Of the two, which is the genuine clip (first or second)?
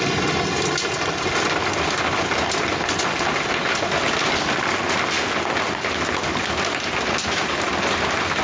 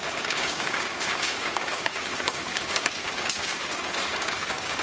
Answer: first